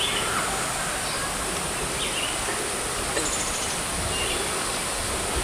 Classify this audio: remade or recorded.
recorded